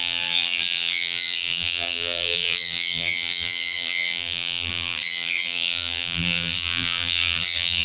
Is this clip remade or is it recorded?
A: remade